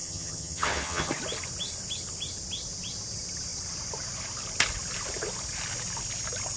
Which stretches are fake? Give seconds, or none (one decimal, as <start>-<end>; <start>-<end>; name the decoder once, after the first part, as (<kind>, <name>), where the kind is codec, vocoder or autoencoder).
0.0-1.1 (vocoder, HiFi-GAN)